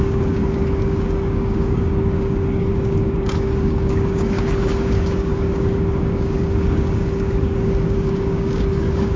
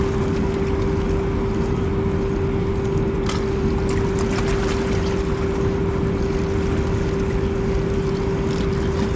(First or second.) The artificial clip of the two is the first